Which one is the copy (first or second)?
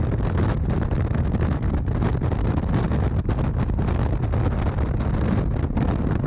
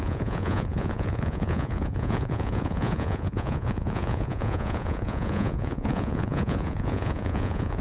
second